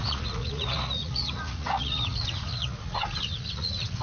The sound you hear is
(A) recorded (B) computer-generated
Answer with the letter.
B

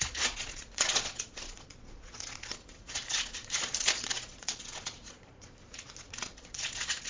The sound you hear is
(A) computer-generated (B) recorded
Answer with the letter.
A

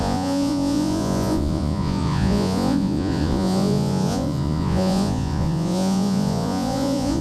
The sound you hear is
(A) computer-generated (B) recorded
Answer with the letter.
A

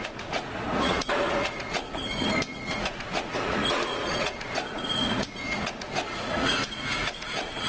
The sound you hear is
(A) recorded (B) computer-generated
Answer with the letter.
B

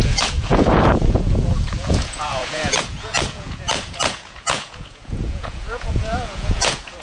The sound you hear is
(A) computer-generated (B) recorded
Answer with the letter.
A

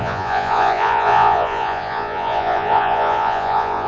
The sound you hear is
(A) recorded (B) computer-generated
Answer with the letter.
B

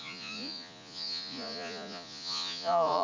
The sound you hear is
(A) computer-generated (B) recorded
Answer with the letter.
A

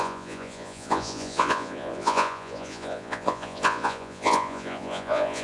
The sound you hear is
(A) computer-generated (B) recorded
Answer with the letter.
A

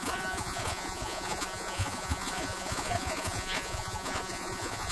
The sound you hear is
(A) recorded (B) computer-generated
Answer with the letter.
B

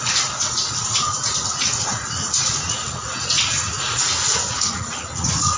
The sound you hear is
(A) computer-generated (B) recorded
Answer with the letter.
A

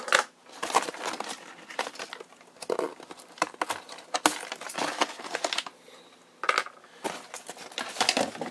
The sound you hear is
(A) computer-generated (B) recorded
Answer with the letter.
B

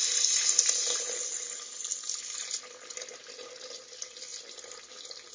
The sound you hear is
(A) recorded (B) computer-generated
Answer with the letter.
A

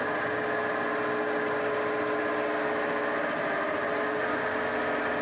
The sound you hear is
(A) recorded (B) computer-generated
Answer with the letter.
A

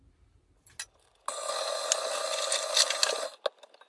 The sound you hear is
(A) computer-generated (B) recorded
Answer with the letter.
B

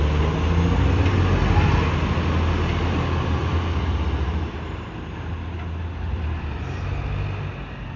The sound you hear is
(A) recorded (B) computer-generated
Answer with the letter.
A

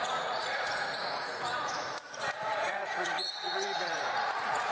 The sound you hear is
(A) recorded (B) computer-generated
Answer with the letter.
B